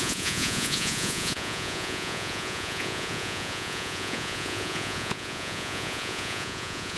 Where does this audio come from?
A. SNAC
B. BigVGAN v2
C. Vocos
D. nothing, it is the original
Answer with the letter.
C